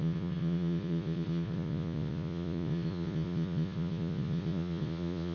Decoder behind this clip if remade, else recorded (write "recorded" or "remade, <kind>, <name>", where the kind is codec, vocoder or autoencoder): remade, vocoder, Vocos